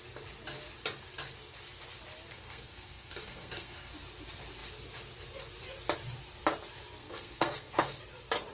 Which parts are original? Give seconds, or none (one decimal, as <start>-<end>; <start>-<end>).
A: 0.0-2.3; 3.9-7.0; 8.0-8.5